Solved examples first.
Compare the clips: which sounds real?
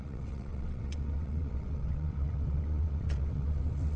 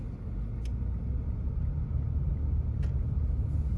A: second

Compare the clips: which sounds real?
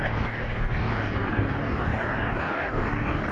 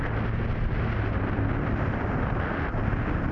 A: second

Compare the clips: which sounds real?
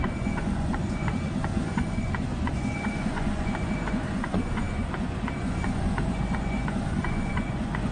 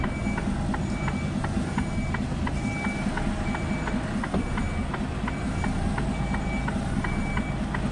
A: second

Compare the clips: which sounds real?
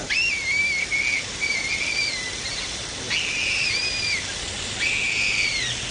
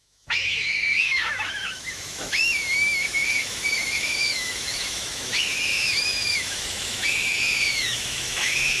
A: first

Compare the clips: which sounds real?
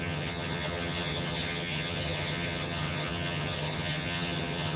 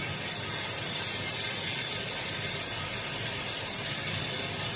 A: second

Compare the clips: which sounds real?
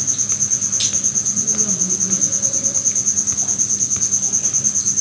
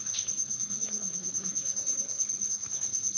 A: first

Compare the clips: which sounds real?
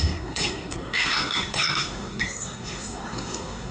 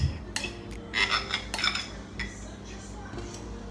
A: second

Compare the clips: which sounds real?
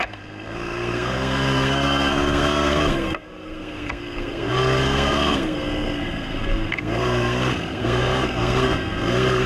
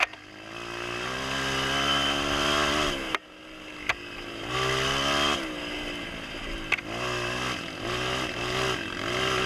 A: second